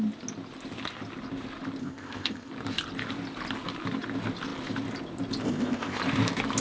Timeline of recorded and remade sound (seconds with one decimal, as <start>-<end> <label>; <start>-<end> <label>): 0.0-1.8 recorded; 1.8-2.5 remade; 2.5-5.4 recorded; 5.4-6.0 remade; 6.0-6.6 recorded